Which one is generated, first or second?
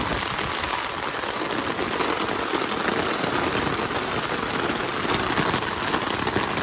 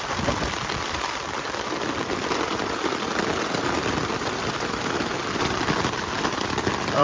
second